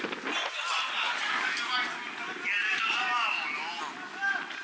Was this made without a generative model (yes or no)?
yes